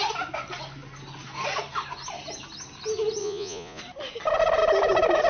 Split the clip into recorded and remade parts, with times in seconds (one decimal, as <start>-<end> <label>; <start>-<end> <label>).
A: 0.0-3.2 recorded; 3.2-3.8 remade; 3.8-5.3 recorded